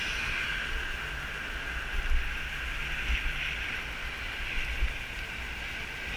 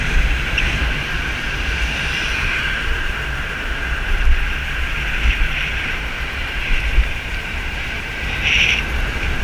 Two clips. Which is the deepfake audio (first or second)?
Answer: second